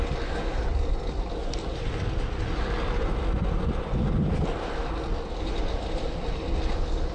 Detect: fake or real real